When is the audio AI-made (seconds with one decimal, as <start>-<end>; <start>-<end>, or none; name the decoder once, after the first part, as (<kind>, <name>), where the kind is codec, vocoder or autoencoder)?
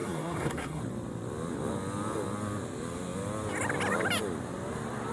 0.0-0.8 (codec, SNAC)